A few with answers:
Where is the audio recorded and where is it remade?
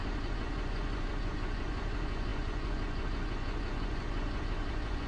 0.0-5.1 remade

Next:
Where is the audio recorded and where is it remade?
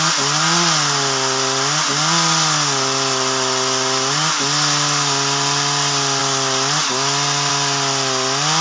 0.0-8.6 recorded